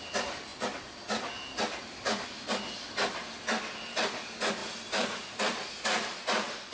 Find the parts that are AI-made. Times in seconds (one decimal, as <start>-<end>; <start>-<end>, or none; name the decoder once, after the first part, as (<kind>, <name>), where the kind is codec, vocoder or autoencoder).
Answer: none